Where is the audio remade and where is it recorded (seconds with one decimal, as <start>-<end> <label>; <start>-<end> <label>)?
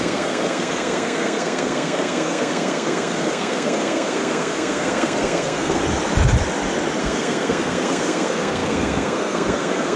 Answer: 0.0-5.8 remade; 5.8-7.0 recorded; 7.0-10.0 remade